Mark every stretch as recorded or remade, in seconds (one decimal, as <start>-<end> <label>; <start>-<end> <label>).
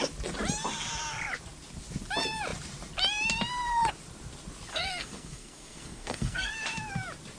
0.0-4.7 recorded; 4.7-6.5 remade; 6.5-7.4 recorded